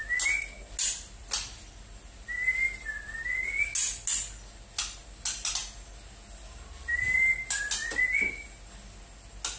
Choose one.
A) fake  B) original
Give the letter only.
B